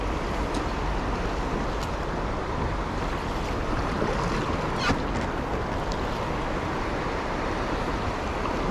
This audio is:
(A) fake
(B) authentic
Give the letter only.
B